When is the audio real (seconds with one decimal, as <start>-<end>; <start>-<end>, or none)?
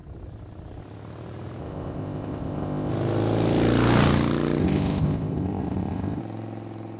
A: 0.0-1.6; 2.9-4.6; 6.2-7.0